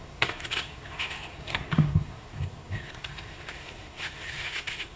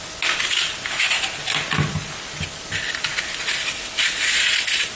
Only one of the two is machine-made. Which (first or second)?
first